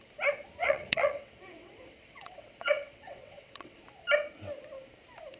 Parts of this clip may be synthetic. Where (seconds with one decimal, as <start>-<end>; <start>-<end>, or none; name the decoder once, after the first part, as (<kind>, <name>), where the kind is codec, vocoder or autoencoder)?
0.6-3.8 (vocoder, WaveNeXt)